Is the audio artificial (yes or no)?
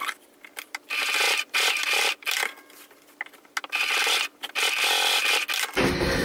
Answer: no